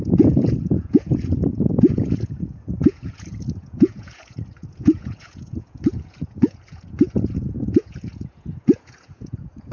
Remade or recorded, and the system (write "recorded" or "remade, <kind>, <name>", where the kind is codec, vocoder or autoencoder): remade, vocoder, Vocos